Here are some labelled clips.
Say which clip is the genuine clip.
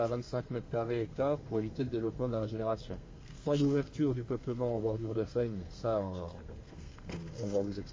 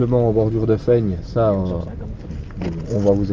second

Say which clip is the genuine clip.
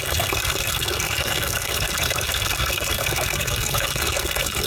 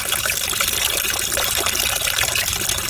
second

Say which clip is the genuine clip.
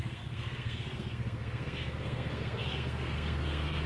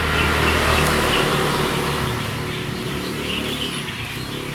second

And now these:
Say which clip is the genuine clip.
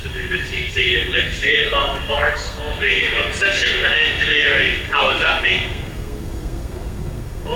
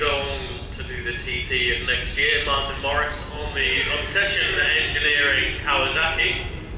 second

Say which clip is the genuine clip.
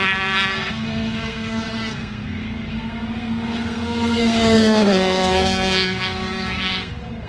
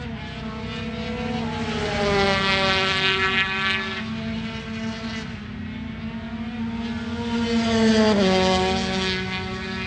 second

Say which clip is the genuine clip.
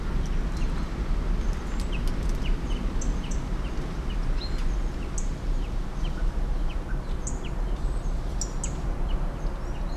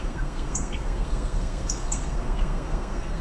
first